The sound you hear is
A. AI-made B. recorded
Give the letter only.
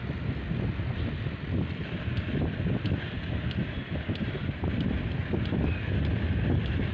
B